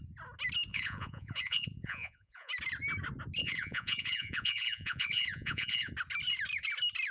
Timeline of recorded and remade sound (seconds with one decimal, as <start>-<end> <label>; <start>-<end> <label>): 0.0-0.7 recorded; 0.7-2.5 remade; 2.5-3.4 recorded; 3.4-5.9 remade; 5.9-7.1 recorded